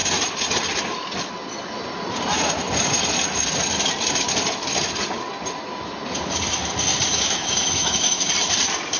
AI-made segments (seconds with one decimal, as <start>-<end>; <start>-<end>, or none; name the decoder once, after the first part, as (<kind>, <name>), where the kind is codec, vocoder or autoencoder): 7.1-8.3 (autoencoder, DAC-VAE)